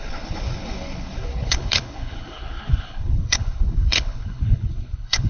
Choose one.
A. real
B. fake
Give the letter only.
B